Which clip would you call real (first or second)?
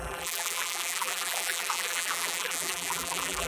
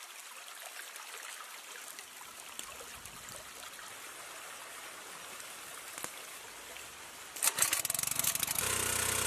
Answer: second